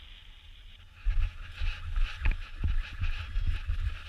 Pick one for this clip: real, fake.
real